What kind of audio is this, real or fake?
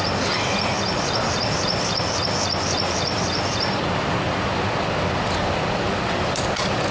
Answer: real